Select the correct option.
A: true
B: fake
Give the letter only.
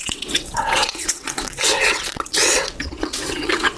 B